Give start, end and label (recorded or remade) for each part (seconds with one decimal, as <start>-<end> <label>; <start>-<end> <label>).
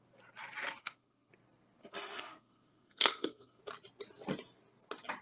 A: 0.0-0.8 recorded; 0.8-1.3 remade; 1.3-1.8 recorded; 1.8-3.6 remade; 3.6-5.2 recorded